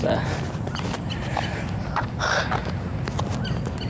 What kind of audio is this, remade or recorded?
recorded